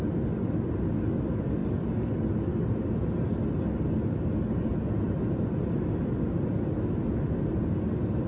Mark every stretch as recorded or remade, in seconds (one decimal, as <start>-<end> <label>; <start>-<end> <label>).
0.0-8.3 recorded